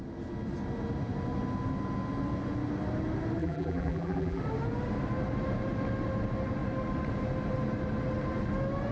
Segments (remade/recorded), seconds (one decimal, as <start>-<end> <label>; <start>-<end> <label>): 0.0-3.4 recorded; 3.4-4.4 remade; 4.4-8.9 recorded